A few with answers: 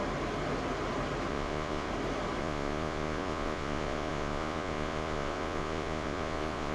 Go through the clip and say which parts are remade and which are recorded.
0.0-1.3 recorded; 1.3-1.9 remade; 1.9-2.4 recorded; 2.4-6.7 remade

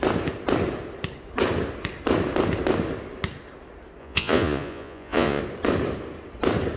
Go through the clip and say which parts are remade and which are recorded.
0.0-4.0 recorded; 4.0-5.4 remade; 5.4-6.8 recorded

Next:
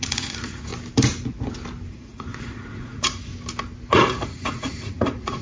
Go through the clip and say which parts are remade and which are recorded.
0.0-0.7 remade; 0.7-1.9 recorded; 1.9-3.3 remade; 3.3-3.9 recorded; 3.9-5.4 remade

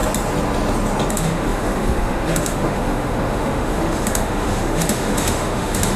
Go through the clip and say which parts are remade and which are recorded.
0.0-1.1 recorded; 1.1-6.0 remade